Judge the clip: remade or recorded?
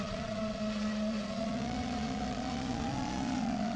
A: remade